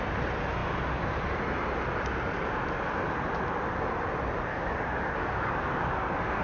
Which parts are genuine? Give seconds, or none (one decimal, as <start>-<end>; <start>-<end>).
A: 0.0-4.5